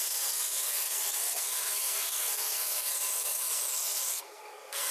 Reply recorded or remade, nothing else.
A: remade